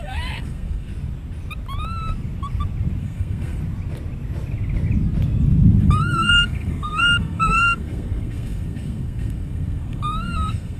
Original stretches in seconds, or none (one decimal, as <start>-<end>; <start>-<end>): 0.9-3.0; 3.6-5.8